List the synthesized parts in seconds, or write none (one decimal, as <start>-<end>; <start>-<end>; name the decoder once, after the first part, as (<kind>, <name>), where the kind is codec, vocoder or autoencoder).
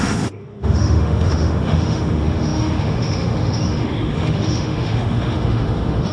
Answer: 0.0-6.1 (autoencoder, DAC-VAE)